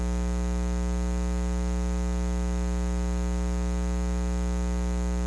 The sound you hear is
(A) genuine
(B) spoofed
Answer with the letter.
A